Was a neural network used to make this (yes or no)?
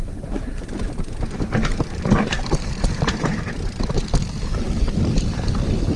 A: yes